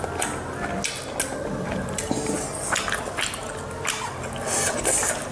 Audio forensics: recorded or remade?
recorded